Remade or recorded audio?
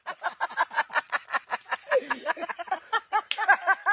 recorded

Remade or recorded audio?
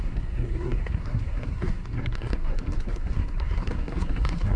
remade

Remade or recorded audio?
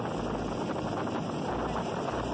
recorded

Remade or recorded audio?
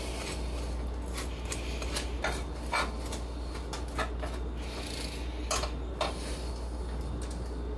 recorded